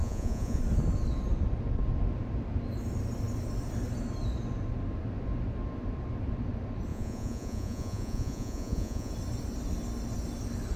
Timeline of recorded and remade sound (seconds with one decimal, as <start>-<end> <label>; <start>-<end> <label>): 0.0-0.6 remade; 0.6-6.9 recorded; 6.9-9.1 remade; 9.1-10.8 recorded